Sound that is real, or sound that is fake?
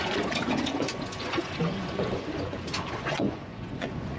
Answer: fake